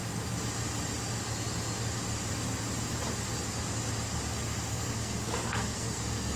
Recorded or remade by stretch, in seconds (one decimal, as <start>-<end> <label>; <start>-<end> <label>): 0.0-4.7 recorded; 4.7-6.4 remade